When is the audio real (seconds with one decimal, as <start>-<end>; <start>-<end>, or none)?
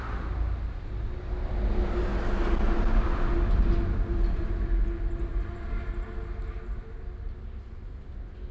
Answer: 0.0-8.5